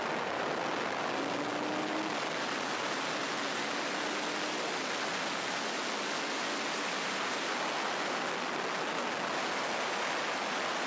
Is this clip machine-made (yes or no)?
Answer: no